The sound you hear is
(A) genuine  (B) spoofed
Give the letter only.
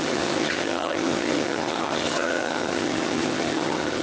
B